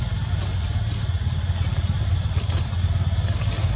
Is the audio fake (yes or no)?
no